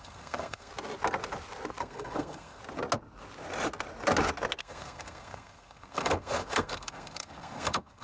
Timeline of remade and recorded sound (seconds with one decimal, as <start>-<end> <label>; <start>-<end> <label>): 0.0-0.7 remade; 0.7-1.8 recorded; 1.8-2.6 remade; 2.6-4.6 recorded; 4.6-8.0 remade